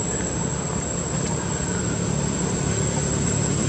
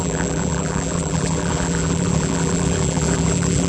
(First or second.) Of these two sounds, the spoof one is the second